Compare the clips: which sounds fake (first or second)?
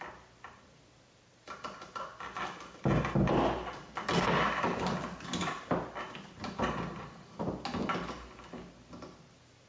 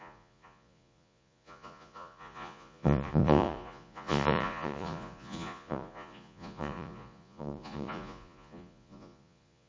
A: second